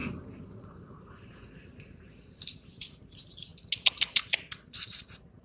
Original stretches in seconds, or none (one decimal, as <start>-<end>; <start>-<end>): 3.5-4.7